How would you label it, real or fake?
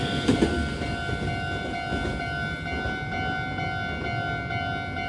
real